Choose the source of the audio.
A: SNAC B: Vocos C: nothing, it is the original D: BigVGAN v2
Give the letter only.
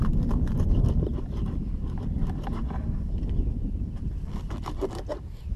C